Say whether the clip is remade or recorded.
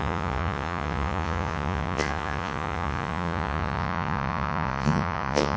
remade